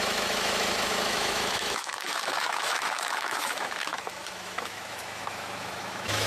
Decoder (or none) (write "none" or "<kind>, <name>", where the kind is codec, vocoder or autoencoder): autoencoder, DAC-VAE